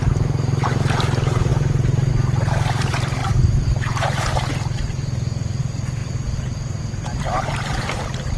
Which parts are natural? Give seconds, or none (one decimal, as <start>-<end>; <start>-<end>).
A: none